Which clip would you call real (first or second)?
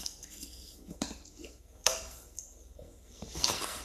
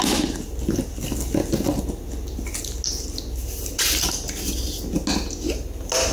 second